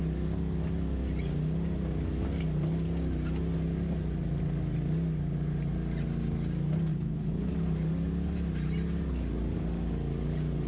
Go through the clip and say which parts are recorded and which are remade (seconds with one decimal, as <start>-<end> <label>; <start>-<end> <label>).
0.0-6.9 recorded; 6.9-7.5 remade; 7.5-10.7 recorded

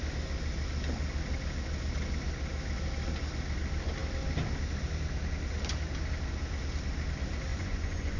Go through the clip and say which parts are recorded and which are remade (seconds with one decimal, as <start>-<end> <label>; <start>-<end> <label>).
0.0-7.5 recorded; 7.5-8.2 remade

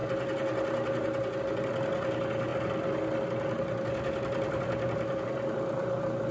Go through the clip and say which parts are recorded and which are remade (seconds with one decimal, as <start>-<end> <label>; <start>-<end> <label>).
0.0-6.3 recorded

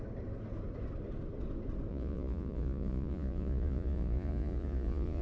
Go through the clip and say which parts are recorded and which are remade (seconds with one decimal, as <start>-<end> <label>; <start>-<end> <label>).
0.0-1.9 recorded; 1.9-5.2 remade